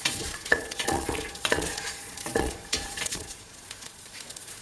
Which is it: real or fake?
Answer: fake